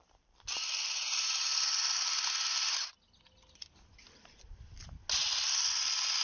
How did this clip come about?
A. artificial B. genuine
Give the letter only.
B